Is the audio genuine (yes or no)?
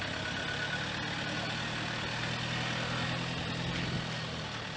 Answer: yes